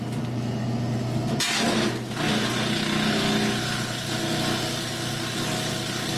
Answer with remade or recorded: recorded